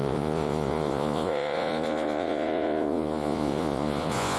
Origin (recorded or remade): remade